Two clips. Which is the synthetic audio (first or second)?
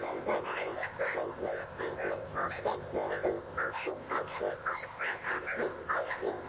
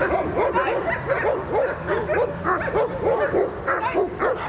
first